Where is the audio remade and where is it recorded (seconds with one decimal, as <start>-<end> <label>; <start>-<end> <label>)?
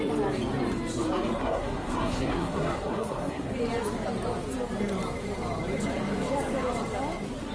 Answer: 0.0-1.4 recorded; 1.4-3.5 remade; 3.5-7.5 recorded